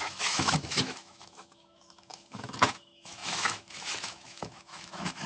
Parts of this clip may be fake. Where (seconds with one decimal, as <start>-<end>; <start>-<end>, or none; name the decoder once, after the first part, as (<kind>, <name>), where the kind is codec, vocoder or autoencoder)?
0.0-5.3 (autoencoder, DAC-VAE)